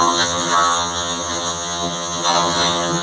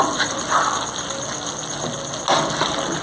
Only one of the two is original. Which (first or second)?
second